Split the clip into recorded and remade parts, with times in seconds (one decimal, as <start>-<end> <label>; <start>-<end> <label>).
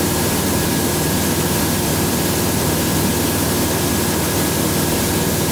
0.0-5.5 recorded